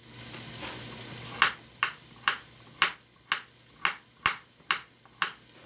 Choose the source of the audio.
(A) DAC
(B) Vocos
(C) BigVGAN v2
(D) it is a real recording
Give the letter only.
D